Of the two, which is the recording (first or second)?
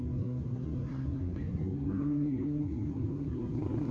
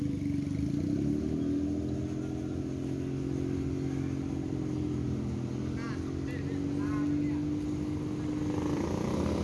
second